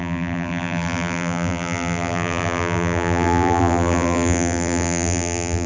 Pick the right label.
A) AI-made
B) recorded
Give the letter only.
A